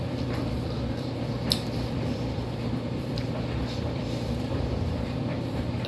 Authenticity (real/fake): fake